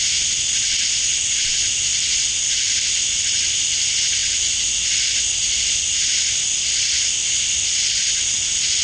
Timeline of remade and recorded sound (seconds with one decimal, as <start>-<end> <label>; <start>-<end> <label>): 0.0-8.8 recorded